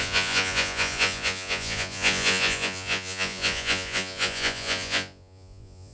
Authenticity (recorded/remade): remade